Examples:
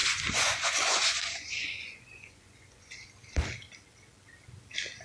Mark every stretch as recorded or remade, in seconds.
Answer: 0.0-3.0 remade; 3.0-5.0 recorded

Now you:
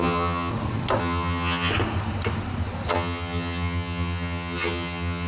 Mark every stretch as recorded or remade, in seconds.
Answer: 0.0-0.5 remade; 0.5-1.0 recorded; 1.0-1.7 remade; 1.7-2.9 recorded; 2.9-5.3 remade

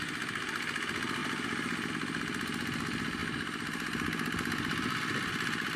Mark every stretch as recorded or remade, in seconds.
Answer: 0.0-5.8 recorded

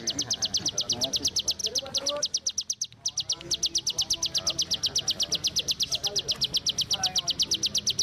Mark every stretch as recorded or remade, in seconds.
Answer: 0.0-1.6 recorded; 1.6-2.2 remade; 2.2-8.0 recorded